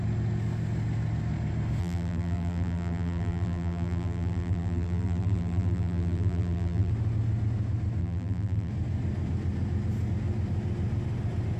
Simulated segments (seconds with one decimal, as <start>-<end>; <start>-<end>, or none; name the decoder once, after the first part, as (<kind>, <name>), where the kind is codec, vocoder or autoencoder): 1.8-6.9 (vocoder, BigVGAN v2); 8.0-8.7